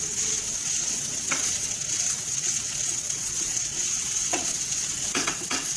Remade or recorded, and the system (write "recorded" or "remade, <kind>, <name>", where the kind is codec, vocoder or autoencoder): remade, vocoder, WaveNeXt